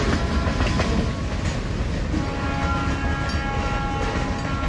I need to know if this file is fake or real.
real